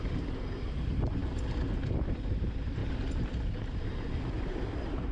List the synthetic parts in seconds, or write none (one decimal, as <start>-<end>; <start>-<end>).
0.0-1.2; 2.3-5.1